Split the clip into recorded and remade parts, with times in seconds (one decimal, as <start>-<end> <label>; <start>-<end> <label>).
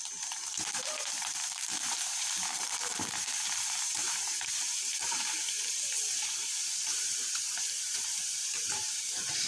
0.0-9.5 remade